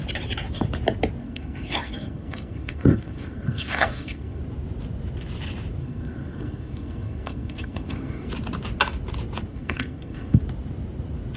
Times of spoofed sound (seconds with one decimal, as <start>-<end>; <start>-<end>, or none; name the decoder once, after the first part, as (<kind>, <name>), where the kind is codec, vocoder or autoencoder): 1.2-4.4 (codec, SNAC); 5.8-8.3; 9.5-10.4